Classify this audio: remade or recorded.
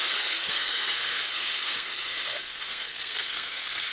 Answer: remade